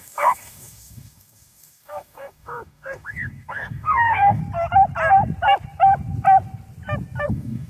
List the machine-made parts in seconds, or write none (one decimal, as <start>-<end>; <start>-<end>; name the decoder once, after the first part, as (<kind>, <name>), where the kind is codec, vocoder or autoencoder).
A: 0.0-4.4 (codec, DAC); 7.3-7.7